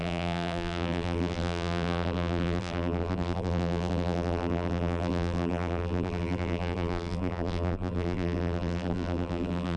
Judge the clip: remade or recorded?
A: remade